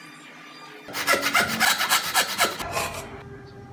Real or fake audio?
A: real